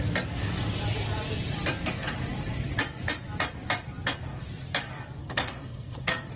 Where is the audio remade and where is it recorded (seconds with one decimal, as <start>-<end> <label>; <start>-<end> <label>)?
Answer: 0.0-5.2 recorded; 5.2-6.3 remade